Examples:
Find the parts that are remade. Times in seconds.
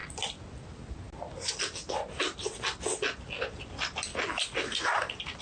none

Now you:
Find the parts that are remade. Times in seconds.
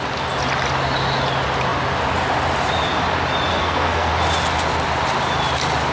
3.5-4.1 (codec, SNAC)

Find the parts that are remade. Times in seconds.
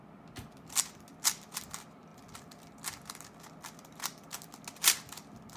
none